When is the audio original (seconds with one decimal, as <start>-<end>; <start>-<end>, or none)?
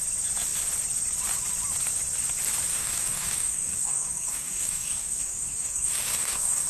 0.0-2.7